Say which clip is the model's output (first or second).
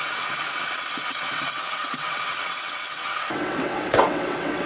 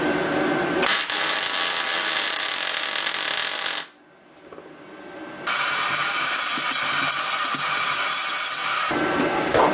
first